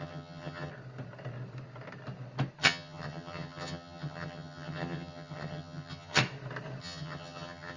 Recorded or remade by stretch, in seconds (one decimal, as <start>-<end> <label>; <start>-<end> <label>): 0.0-0.7 remade; 0.7-2.6 recorded; 2.6-6.2 remade; 6.2-6.8 recorded; 6.8-7.8 remade